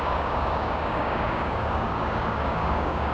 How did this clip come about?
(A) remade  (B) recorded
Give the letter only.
A